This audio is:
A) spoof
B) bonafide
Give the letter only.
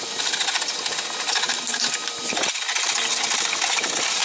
B